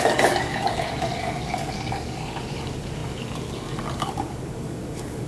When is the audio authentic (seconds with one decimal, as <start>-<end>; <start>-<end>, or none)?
none